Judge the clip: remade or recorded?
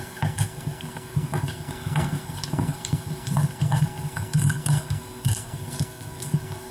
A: remade